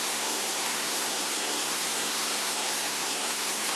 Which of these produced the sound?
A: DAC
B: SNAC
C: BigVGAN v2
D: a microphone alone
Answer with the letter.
B